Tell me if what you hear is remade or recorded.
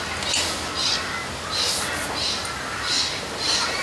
recorded